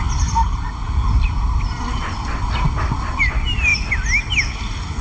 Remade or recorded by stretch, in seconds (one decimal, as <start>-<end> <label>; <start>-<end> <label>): 0.0-5.0 recorded